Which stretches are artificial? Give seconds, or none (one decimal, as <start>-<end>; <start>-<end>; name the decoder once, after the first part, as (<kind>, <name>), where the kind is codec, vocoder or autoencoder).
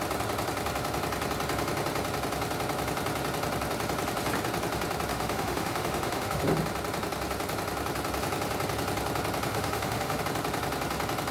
5.1-6.4 (autoencoder, DAC-VAE); 9.5-10.2